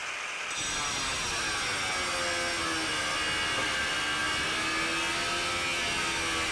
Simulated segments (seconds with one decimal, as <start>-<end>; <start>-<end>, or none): none